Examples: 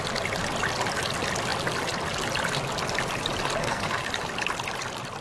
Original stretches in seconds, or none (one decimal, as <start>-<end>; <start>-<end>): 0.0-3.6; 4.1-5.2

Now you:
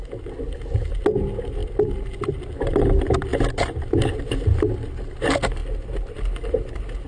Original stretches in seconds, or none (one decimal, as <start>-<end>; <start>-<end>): 0.0-7.1

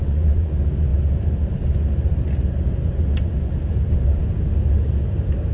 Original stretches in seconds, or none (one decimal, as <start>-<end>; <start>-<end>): 0.5-5.5

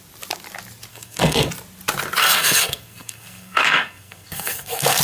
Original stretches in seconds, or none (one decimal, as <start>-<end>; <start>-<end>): 0.0-0.9; 1.5-2.2